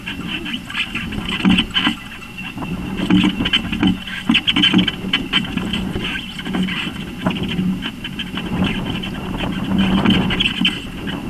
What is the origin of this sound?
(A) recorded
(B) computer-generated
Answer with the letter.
A